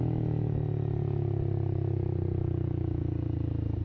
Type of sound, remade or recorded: recorded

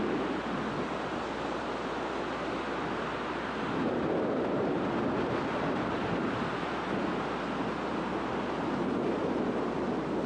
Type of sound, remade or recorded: recorded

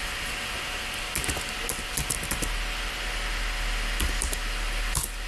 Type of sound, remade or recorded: recorded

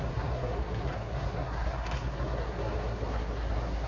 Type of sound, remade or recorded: remade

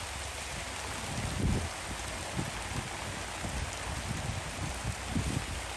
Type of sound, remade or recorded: recorded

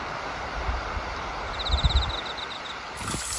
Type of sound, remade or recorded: recorded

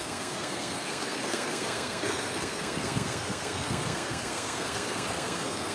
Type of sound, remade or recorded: remade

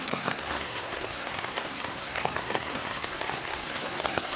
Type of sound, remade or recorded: remade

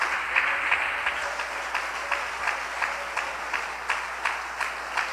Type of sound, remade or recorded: recorded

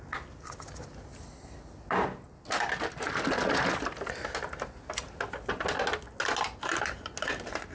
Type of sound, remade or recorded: recorded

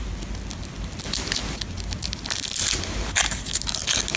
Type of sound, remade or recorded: recorded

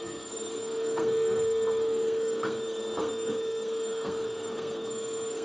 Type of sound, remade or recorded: remade